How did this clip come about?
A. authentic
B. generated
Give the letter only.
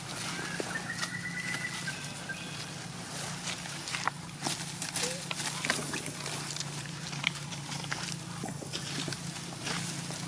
A